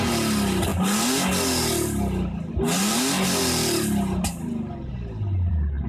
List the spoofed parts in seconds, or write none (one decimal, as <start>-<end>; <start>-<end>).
none